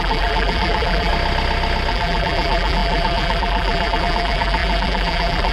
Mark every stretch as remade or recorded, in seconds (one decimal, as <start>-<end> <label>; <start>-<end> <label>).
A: 0.0-1.1 remade; 1.1-1.9 recorded; 1.9-5.5 remade